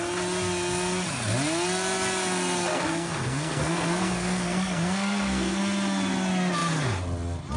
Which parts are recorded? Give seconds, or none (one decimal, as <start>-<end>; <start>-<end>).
0.0-2.7; 5.6-7.6

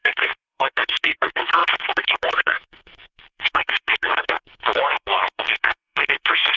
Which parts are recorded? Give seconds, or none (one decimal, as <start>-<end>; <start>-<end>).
none